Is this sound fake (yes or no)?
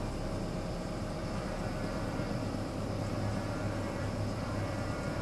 yes